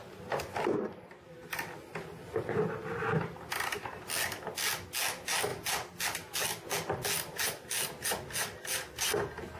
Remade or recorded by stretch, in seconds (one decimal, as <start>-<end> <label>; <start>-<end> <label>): 0.0-9.6 recorded